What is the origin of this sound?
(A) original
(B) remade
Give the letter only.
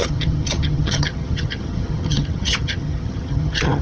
B